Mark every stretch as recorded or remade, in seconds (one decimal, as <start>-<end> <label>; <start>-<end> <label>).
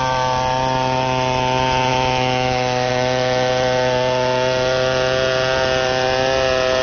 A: 0.0-1.9 recorded; 1.9-2.9 remade; 2.9-6.8 recorded